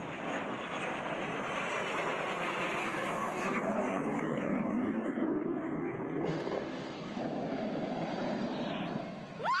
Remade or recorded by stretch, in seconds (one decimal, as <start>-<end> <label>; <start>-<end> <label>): 0.0-2.8 recorded; 2.8-7.2 remade; 7.2-9.6 recorded